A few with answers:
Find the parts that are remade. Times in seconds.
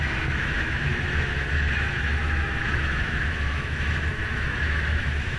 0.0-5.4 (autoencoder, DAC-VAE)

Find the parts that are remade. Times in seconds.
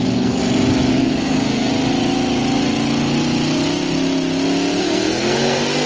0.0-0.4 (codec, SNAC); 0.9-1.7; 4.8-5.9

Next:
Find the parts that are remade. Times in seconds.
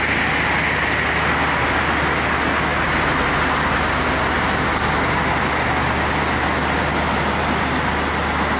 2.7-4.9 (vocoder, BigVGAN v2)